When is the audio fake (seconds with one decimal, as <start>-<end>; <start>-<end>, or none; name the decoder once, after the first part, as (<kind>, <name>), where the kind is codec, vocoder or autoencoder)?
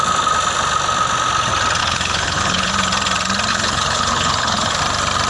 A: 1.8-2.7 (codec, HILCodec); 3.5-4.8